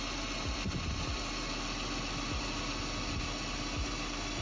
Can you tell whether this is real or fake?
real